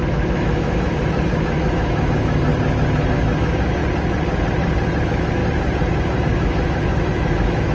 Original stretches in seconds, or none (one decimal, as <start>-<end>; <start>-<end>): 2.5-3.1; 3.8-5.0; 5.4-6.2